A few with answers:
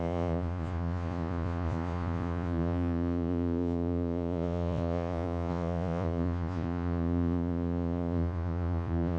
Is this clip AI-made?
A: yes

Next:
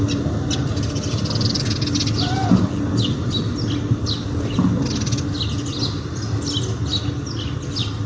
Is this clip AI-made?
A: no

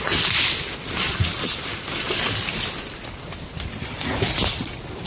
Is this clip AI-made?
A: no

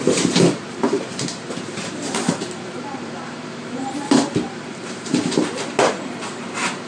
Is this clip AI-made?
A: yes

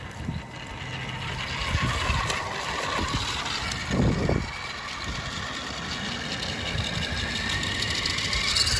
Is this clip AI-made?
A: no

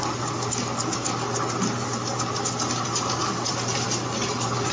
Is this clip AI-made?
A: no